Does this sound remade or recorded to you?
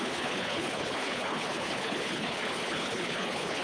remade